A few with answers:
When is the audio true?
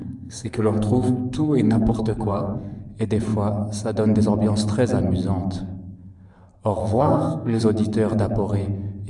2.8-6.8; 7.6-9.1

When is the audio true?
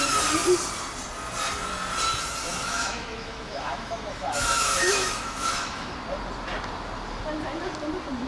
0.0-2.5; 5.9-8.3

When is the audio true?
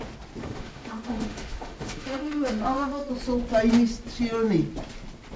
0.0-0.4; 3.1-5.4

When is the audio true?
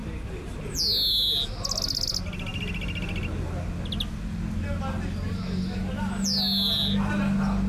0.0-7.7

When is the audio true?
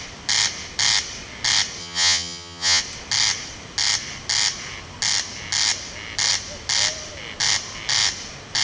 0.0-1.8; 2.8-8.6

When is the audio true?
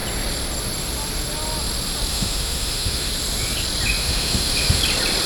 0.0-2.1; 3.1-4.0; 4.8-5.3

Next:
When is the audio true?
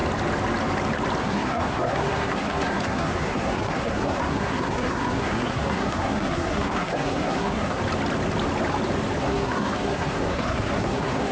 0.0-1.2; 7.8-9.2